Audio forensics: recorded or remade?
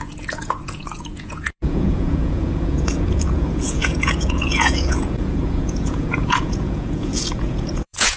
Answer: remade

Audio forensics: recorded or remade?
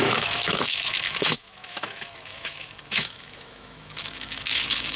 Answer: remade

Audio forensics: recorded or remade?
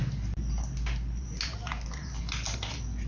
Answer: recorded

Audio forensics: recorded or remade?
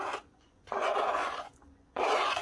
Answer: remade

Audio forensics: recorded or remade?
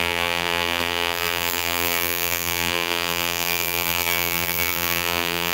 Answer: remade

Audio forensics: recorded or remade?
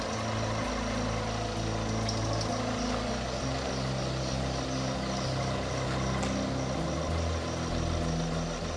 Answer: recorded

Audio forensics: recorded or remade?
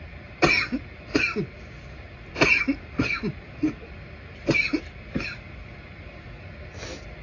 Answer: remade